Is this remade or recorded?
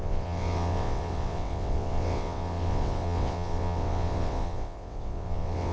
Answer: remade